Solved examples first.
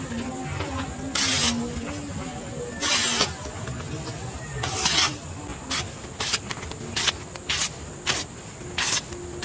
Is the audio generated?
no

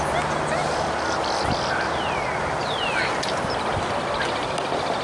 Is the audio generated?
no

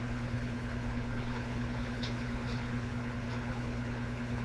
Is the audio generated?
yes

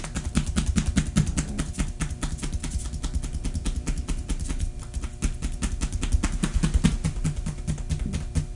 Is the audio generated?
no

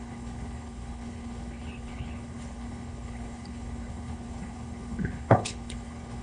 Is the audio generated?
yes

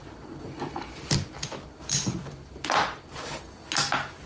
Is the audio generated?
no